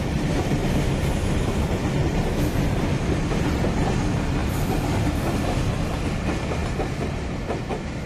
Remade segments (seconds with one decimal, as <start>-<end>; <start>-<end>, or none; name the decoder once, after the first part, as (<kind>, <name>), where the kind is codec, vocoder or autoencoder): 0.0-0.6 (vocoder, BigVGAN v2); 3.1-4.4; 5.9-8.1